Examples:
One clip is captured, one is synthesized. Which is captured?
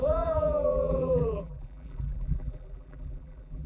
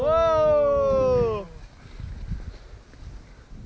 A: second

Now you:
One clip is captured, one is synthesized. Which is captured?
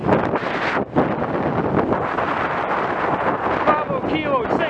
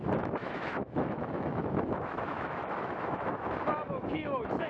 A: first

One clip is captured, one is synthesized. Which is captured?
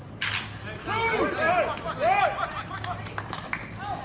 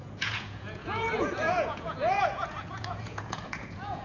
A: first